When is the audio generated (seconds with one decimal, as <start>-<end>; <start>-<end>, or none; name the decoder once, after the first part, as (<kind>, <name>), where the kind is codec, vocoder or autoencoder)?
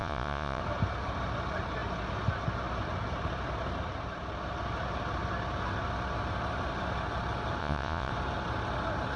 0.0-0.6 (vocoder, Vocos); 7.6-8.1